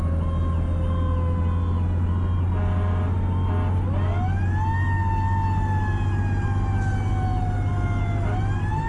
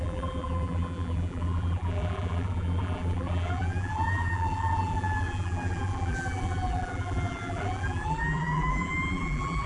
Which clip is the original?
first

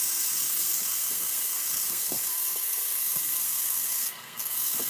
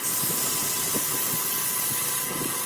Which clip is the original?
second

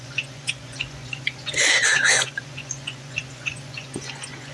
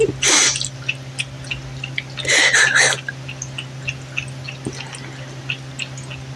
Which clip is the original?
second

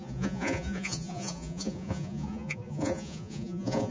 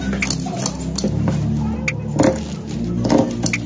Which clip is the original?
second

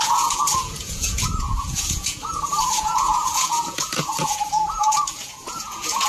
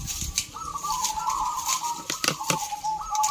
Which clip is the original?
second